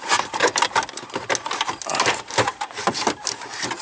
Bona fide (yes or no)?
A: yes